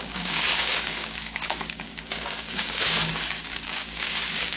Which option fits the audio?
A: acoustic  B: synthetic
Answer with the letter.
B